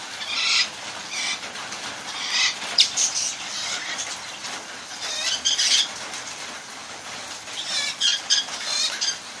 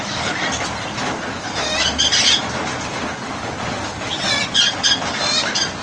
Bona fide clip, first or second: second